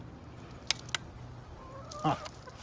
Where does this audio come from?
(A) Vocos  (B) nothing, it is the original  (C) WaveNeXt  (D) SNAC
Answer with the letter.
B